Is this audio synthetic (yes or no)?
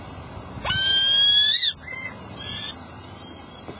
no